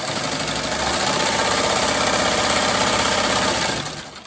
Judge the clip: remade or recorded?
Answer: remade